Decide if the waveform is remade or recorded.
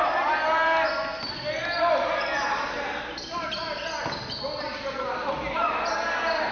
recorded